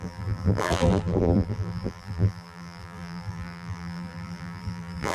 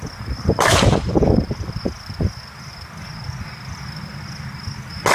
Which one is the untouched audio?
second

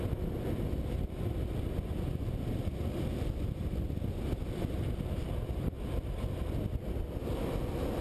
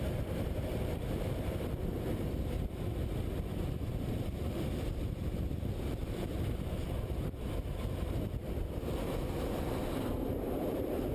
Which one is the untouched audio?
first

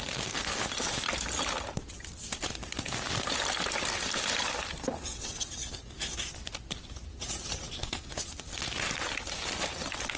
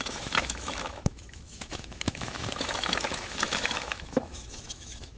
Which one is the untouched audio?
first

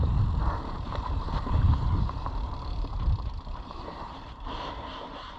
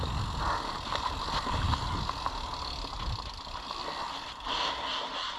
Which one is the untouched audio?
second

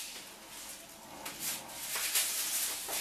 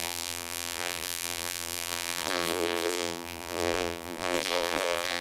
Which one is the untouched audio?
first